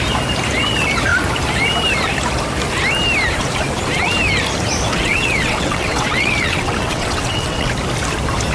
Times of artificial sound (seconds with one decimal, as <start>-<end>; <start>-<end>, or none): 4.9-7.7